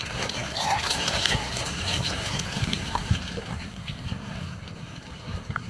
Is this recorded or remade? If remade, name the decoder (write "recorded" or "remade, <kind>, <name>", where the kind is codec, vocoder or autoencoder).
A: remade, codec, SNAC